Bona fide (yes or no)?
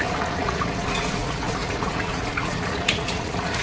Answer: no